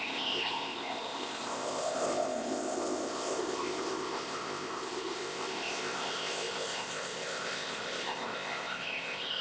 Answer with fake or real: fake